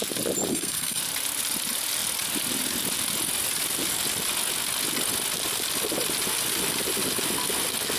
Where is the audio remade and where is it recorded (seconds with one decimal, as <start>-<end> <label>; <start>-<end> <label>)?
0.0-0.5 recorded; 0.5-1.0 remade; 1.0-8.0 recorded